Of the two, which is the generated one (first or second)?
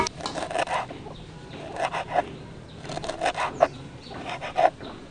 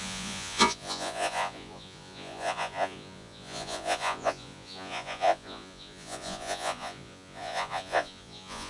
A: second